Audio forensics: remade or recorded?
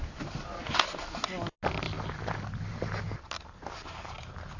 recorded